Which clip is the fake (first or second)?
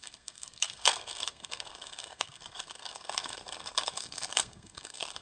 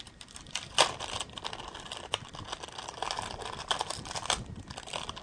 first